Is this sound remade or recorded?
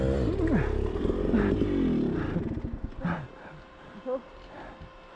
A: recorded